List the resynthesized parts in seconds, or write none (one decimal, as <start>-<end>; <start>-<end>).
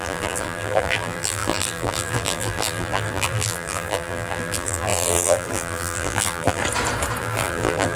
0.0-6.6; 7.2-8.0